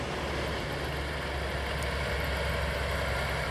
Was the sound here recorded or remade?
recorded